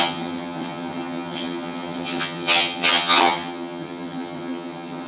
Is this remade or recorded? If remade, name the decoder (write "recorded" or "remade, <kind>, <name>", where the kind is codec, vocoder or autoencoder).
remade, vocoder, HiFi-GAN